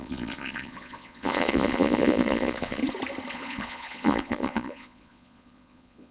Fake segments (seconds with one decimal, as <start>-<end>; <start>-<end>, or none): 0.0-2.8; 3.3-6.1